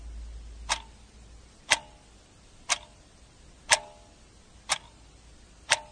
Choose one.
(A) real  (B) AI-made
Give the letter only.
A